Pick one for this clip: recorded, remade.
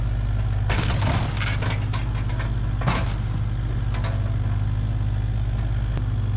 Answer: recorded